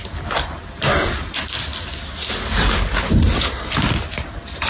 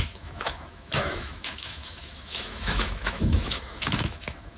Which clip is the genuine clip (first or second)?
first